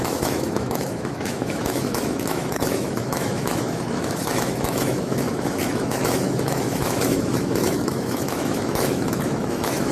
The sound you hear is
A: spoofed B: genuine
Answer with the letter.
A